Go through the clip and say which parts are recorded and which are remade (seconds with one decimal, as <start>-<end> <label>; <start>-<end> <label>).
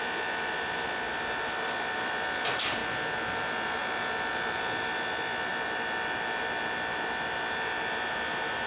0.0-2.8 remade; 2.8-3.3 recorded; 3.3-3.8 remade; 3.8-4.3 recorded; 4.3-5.5 remade; 5.5-8.7 recorded